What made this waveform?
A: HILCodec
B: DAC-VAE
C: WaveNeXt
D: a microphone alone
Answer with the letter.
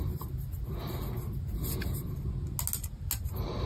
D